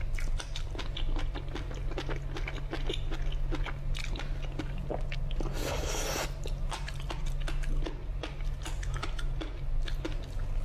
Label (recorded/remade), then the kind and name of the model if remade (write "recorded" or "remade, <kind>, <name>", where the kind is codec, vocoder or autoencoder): recorded